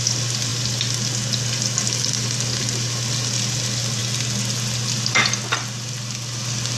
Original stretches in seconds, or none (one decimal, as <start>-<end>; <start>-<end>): 0.0-6.8